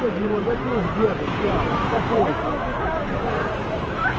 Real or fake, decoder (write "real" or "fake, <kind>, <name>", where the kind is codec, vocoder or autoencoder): fake, vocoder, BigVGAN v2